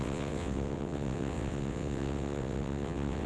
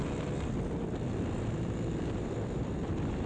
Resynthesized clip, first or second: first